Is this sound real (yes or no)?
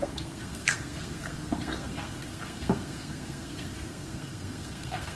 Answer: no